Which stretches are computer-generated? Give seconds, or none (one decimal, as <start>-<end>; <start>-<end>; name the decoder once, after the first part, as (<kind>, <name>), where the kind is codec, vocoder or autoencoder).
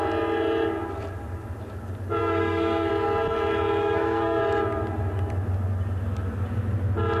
2.2-2.9 (codec, SNAC); 3.8-4.4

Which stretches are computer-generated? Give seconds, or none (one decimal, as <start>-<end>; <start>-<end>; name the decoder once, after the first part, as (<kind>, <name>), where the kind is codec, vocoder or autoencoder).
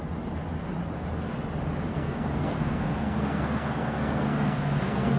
1.9-5.2 (codec, SNAC)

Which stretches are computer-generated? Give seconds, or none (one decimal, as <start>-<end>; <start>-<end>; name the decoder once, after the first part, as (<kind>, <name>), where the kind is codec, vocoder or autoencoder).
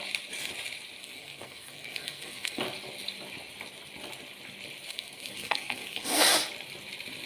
1.0-2.6 (codec, SNAC); 4.9-6.2